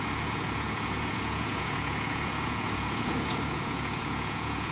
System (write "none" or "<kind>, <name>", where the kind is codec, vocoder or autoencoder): vocoder, Vocos